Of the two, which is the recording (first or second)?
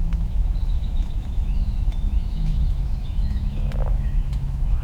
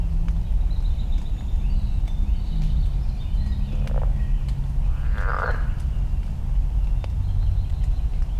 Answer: second